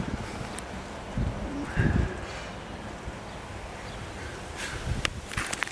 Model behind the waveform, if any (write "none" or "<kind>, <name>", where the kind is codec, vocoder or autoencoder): none